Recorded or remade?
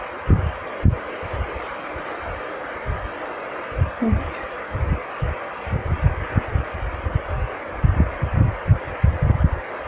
remade